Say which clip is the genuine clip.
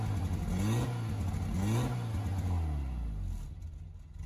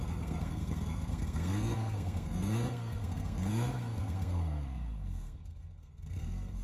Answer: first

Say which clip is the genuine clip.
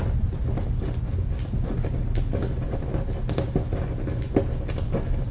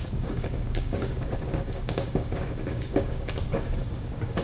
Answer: first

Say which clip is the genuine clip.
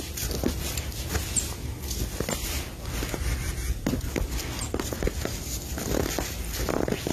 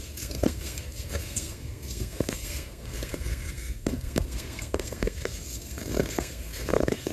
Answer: first